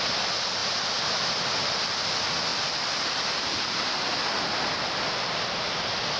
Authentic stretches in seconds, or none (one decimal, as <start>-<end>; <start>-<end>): 0.0-6.2